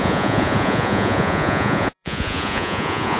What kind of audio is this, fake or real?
fake